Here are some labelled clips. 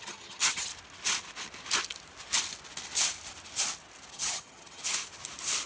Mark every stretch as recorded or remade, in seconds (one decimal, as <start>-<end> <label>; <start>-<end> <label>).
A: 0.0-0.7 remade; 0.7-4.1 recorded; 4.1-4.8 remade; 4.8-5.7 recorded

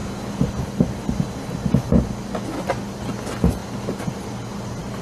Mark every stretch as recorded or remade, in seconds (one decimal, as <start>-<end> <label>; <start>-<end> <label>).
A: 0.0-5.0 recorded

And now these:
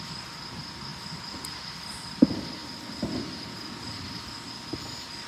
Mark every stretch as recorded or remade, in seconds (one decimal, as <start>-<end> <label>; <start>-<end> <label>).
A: 0.0-5.3 recorded

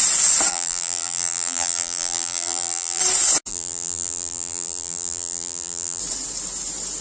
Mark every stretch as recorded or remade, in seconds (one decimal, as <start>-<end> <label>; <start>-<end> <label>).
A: 0.0-0.5 recorded; 0.5-3.0 remade; 3.0-3.5 recorded; 3.5-6.0 remade; 6.0-7.0 recorded

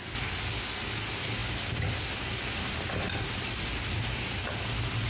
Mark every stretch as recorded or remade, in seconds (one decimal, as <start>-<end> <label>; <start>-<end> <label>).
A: 0.0-5.1 recorded